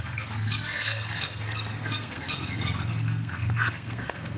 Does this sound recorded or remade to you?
remade